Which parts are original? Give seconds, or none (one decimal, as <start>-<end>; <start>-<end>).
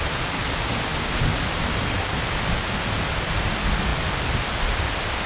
0.0-5.3